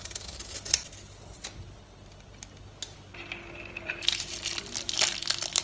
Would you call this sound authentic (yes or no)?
yes